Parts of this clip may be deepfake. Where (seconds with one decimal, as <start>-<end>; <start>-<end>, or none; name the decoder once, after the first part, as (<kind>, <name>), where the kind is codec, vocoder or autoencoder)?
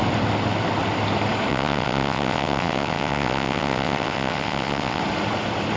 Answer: 1.5-5.0 (vocoder, WaveNeXt)